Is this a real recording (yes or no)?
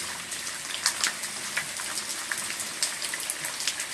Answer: yes